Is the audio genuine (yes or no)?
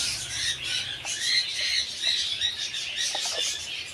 yes